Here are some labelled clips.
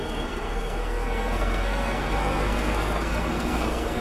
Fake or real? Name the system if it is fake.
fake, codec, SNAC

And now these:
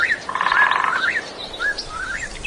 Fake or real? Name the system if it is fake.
real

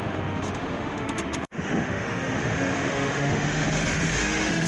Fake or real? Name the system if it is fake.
fake, autoencoder, DAC-VAE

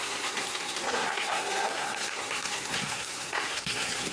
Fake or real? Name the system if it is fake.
fake, codec, SNAC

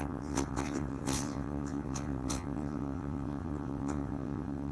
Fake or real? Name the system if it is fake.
fake, vocoder, WaveNeXt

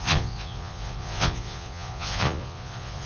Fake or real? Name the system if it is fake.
fake, vocoder, Vocos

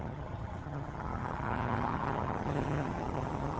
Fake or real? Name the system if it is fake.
fake, vocoder, HiFi-GAN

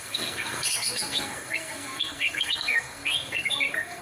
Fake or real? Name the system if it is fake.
fake, codec, SNAC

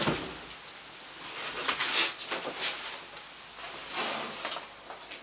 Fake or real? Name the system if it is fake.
real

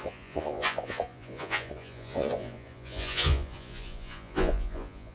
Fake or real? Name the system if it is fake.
fake, vocoder, Vocos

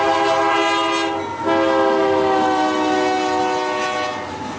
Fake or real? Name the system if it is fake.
real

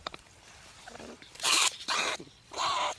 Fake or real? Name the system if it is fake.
fake, vocoder, BigVGAN v2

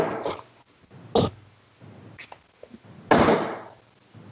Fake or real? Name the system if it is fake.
real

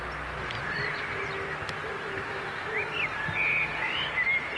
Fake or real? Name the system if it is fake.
real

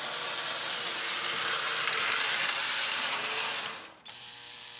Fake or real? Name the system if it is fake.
real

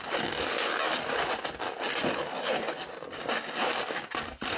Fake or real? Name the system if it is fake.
real